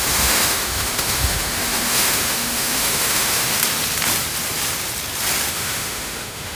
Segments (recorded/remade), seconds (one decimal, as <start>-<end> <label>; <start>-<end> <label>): 0.0-3.6 remade; 3.6-5.5 recorded; 5.5-6.5 remade